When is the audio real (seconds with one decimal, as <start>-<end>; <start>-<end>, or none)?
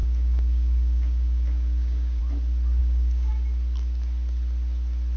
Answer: 2.2-2.8; 3.3-5.2